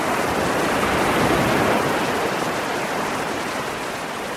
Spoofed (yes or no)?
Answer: no